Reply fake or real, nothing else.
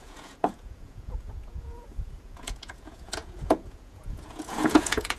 fake